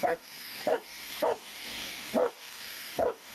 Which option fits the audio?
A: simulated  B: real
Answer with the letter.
A